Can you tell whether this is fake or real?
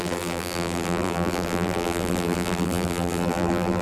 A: fake